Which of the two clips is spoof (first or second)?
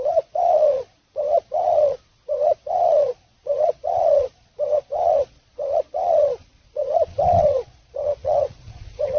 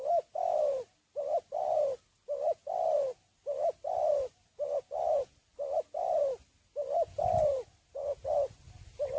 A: first